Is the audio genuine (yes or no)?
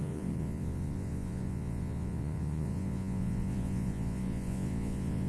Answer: no